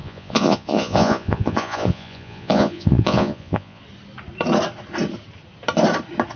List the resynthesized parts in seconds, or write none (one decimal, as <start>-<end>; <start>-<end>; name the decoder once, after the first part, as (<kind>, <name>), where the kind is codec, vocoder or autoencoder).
0.0-3.8 (vocoder, Vocos)